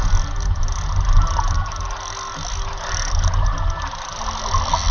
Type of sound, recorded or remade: recorded